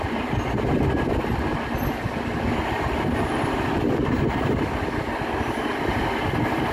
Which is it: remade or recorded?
recorded